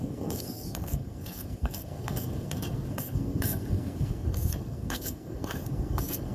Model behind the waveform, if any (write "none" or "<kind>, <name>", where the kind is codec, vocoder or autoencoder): codec, SNAC